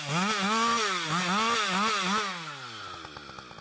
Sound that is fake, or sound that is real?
real